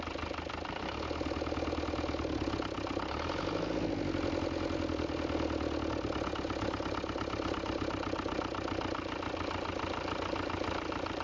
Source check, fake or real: real